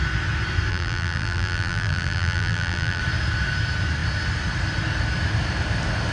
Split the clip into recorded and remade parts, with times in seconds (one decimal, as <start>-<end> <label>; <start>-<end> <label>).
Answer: 0.0-0.7 recorded; 0.7-3.0 remade; 3.0-6.1 recorded